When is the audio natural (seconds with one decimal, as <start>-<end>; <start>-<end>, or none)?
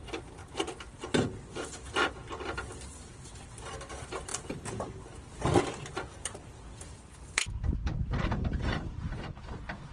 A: 0.4-3.1